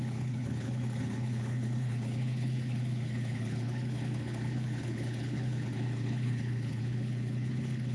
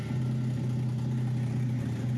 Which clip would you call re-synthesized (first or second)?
first